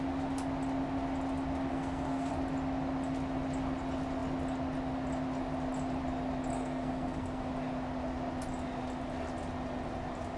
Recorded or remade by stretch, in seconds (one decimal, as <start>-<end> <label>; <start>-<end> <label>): 0.0-1.7 recorded; 1.7-2.3 remade; 2.3-6.5 recorded; 6.5-7.5 remade; 7.5-10.4 recorded